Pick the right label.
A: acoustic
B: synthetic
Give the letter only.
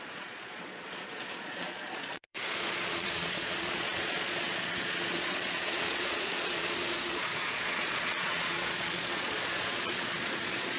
B